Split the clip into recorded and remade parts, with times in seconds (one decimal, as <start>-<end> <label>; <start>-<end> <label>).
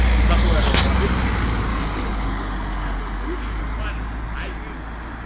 0.0-1.7 recorded; 1.7-3.6 remade; 3.6-5.3 recorded